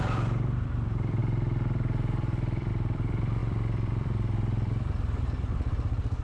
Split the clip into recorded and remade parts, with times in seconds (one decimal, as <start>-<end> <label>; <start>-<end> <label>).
0.0-6.2 remade